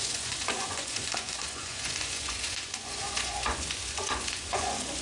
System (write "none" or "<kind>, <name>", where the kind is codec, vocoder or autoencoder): vocoder, Vocos